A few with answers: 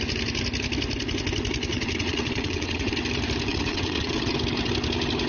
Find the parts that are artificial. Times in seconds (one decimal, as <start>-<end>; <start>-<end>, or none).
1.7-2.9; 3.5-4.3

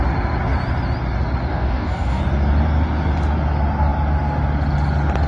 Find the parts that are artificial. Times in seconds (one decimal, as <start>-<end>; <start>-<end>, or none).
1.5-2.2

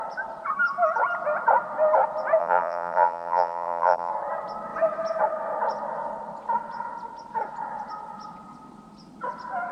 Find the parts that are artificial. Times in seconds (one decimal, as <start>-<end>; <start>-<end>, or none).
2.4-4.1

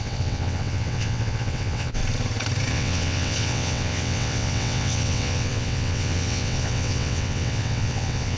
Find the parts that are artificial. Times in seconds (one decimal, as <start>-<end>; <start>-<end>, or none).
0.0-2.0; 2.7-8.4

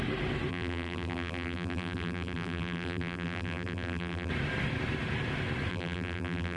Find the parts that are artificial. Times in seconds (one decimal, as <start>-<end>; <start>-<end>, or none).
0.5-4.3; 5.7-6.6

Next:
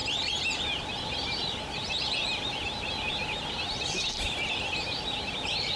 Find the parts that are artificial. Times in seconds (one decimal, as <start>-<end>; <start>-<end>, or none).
none

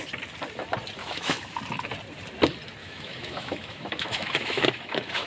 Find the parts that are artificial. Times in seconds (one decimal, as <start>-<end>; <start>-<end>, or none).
1.0-1.6; 2.8-5.3